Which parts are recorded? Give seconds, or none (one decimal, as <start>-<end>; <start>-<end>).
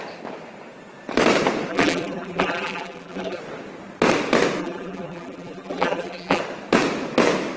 0.0-1.7; 3.4-4.6; 6.4-7.6